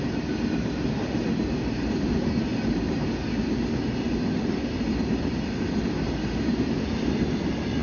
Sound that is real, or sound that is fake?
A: real